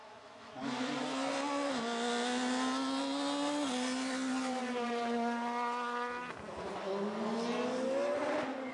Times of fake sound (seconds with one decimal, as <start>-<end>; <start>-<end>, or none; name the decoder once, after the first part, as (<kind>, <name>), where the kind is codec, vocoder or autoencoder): 0.0-0.6 (autoencoder, DAC-VAE)